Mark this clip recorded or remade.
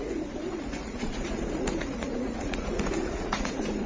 remade